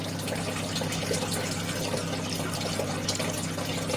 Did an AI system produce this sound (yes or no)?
no